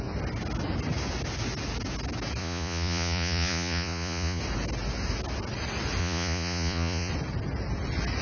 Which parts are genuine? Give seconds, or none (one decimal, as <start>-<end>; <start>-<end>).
0.0-2.4; 4.4-6.0; 7.1-8.2